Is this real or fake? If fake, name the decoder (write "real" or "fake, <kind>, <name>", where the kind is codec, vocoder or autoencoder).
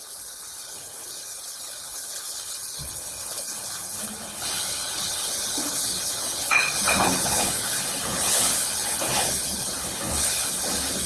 fake, codec, HILCodec